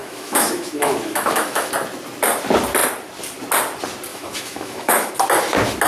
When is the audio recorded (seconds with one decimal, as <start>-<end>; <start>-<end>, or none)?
1.7-4.1; 5.1-5.9